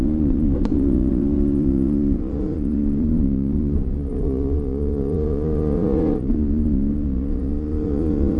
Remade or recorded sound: remade